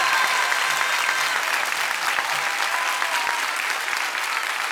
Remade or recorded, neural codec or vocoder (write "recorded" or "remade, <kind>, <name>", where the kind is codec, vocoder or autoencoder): recorded